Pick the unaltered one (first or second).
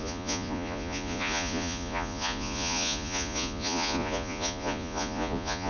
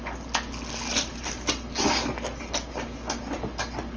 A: second